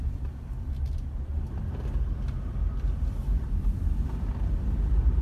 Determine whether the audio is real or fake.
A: fake